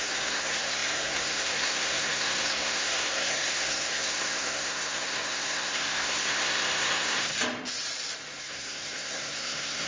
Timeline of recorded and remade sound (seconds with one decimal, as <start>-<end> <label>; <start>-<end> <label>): 0.0-7.3 remade; 7.3-8.4 recorded; 8.4-9.9 remade